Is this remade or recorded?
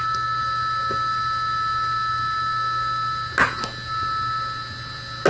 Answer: recorded